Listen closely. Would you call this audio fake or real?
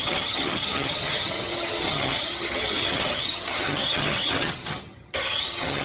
fake